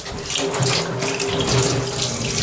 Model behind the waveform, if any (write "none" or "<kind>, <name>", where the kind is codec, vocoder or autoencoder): none